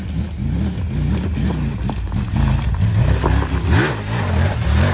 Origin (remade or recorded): recorded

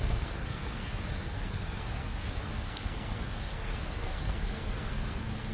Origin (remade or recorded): remade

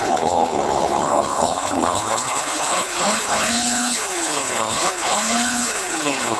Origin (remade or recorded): remade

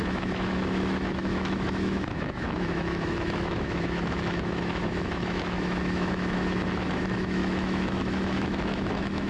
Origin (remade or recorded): remade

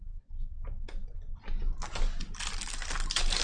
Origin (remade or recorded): recorded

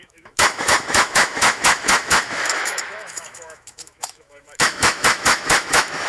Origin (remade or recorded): remade